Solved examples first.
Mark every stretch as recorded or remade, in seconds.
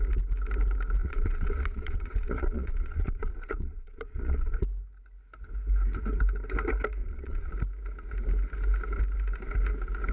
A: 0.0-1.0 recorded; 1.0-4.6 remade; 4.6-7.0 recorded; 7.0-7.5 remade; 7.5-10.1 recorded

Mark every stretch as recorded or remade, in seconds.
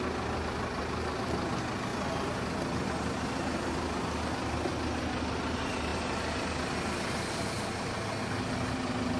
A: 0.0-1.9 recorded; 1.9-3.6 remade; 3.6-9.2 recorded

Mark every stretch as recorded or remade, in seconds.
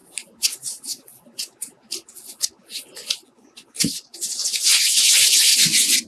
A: 0.0-3.0 recorded; 3.0-3.5 remade; 3.5-4.7 recorded; 4.7-6.1 remade